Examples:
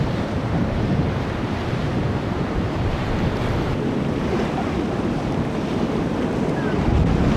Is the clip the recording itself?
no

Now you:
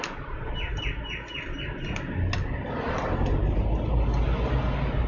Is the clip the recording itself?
yes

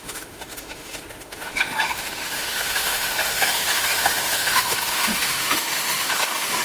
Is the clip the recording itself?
no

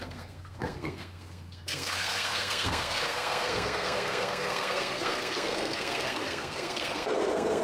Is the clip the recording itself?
no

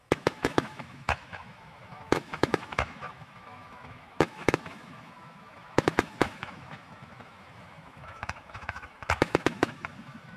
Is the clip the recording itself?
no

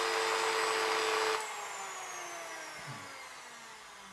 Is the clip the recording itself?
yes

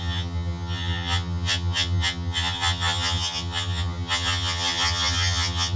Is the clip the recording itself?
no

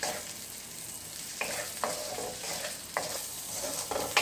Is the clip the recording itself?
no